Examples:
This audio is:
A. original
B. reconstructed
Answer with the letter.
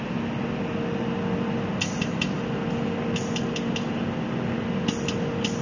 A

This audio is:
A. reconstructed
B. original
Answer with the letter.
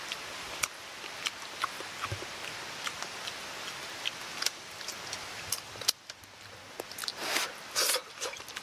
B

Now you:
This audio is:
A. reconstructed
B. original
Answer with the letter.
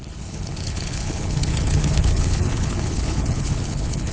A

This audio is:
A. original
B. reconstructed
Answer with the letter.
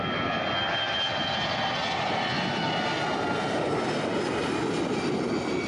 A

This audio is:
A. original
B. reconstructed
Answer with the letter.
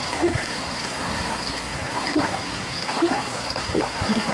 B